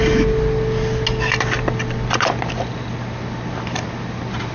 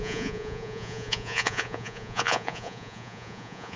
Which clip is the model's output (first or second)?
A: second